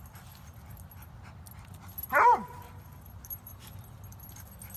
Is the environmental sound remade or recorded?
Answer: recorded